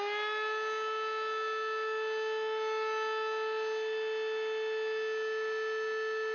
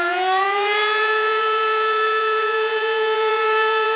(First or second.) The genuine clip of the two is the first